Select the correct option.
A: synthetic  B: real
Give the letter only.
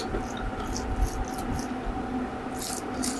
B